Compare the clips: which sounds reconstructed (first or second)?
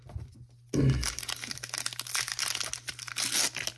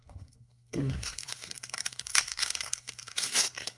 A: second